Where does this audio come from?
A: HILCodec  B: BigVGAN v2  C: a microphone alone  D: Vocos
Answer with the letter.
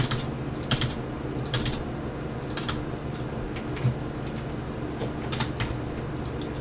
C